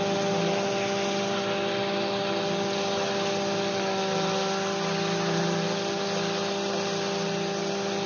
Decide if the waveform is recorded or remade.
recorded